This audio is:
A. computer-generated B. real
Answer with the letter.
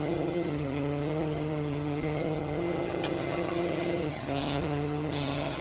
A